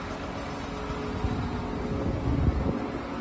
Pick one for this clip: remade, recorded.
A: recorded